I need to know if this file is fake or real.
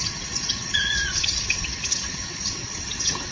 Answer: fake